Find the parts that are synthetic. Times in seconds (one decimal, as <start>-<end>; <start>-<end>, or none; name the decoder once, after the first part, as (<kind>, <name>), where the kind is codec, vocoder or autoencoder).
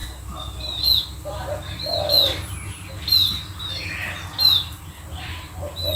none